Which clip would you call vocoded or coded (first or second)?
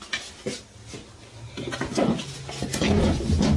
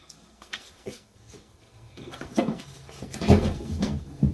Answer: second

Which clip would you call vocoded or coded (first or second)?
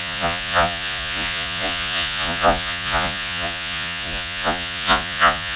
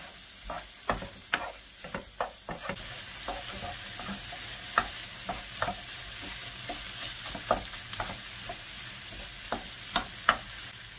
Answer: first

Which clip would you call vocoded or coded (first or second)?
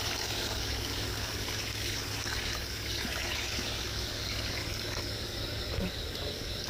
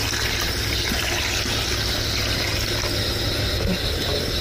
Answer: first